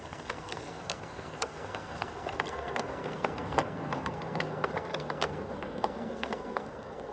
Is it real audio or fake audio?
fake